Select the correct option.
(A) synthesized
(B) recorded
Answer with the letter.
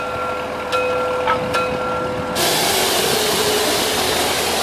B